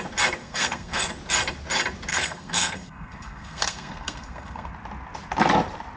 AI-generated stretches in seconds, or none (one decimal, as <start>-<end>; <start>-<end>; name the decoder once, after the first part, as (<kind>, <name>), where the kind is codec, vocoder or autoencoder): 0.4-1.1 (codec, SNAC); 2.1-4.7